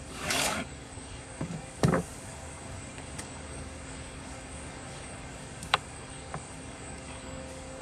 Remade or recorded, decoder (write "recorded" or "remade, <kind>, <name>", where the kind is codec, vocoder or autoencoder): remade, codec, DAC